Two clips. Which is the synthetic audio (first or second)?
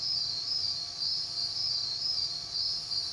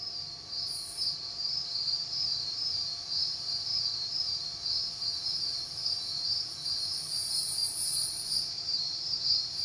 second